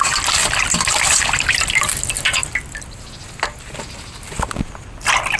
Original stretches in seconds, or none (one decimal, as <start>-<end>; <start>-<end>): 0.0-5.4